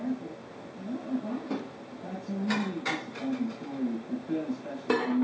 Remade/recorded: recorded